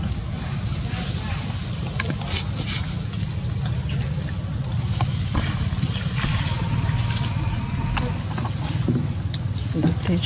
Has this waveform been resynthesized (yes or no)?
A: no